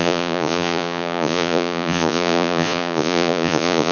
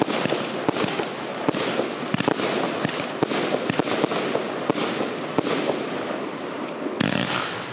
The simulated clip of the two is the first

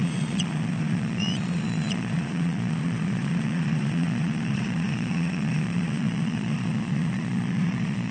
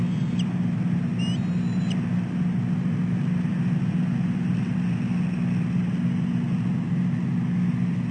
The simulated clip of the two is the first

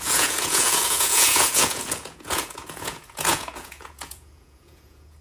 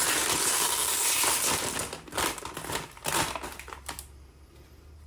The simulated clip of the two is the first